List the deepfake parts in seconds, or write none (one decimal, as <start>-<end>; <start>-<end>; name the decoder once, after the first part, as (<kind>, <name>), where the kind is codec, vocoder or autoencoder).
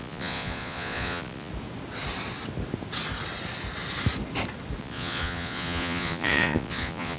0.0-1.5 (vocoder, Vocos); 4.8-7.2